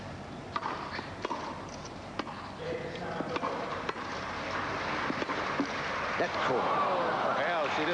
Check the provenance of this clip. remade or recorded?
recorded